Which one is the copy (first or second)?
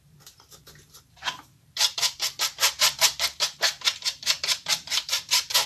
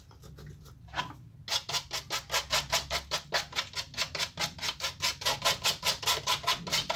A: first